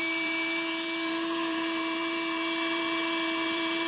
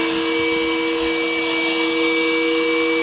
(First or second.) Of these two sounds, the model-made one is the first